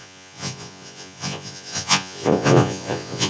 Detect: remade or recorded remade